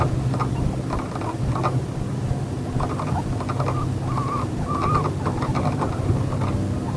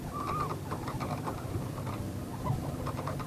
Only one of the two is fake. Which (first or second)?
second